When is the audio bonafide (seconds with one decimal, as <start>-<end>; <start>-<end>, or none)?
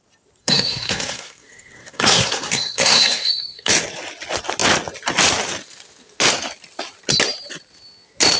0.0-0.4; 3.7-8.4